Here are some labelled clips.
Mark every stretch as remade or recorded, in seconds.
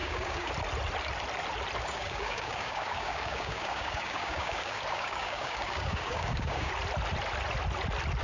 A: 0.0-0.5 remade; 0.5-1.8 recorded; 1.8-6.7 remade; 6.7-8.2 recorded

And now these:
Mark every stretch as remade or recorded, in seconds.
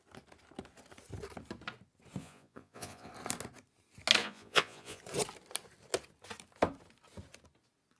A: 0.0-2.2 recorded; 2.2-3.1 remade; 3.1-4.2 recorded; 4.2-5.0 remade; 5.0-8.0 recorded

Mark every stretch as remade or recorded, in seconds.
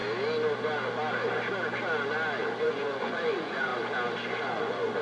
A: 0.0-2.6 recorded; 2.6-3.7 remade; 3.7-4.4 recorded; 4.4-5.0 remade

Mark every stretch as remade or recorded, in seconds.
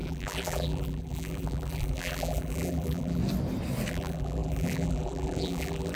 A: 0.0-3.2 remade; 3.2-3.9 recorded; 3.9-6.0 remade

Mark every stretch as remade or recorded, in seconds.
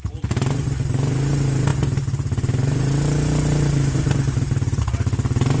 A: 0.0-5.6 recorded